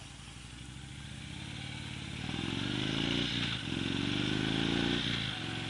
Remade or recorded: recorded